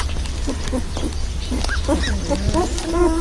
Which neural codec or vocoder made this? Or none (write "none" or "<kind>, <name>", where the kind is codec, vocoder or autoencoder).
none